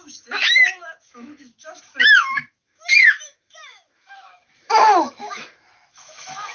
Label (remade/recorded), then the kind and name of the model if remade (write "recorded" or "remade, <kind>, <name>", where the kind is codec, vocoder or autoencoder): remade, autoencoder, DAC-VAE